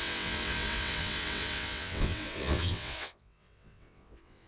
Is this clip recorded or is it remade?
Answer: remade